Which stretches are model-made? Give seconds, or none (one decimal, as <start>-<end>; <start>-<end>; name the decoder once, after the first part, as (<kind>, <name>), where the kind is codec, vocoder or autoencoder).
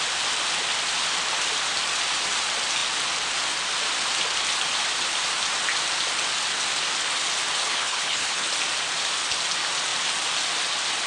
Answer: 7.6-8.5 (codec, HILCodec)